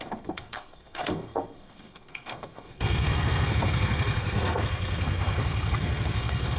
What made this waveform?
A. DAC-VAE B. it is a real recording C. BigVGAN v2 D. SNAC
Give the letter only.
D